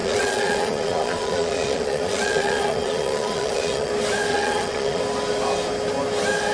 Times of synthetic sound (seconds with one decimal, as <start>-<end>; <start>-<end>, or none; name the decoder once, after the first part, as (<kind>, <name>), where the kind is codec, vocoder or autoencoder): 0.0-3.9 (vocoder, Vocos); 4.3-5.0